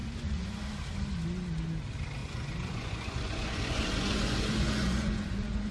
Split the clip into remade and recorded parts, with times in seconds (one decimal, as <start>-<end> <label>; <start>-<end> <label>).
0.0-0.7 remade; 0.7-2.2 recorded; 2.2-5.7 remade

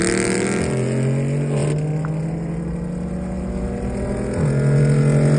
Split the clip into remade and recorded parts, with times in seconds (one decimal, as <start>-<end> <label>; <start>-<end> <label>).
0.0-5.4 recorded